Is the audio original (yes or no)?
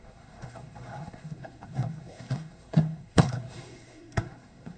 no